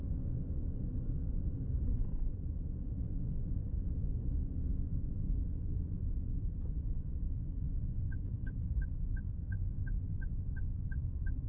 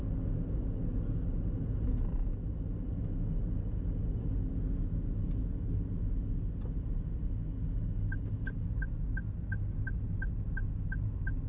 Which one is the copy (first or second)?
first